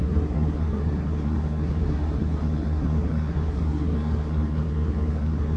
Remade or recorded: remade